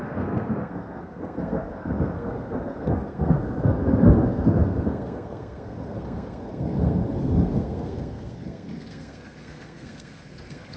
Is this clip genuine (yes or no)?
no